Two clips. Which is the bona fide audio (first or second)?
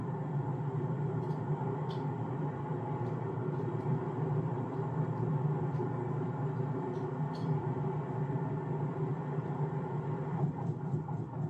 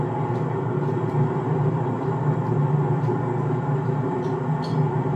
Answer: second